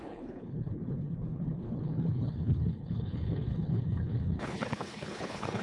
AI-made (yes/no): yes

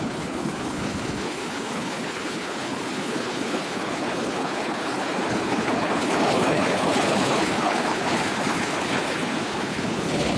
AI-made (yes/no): yes